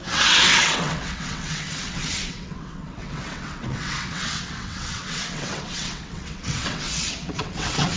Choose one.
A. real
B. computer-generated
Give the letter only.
B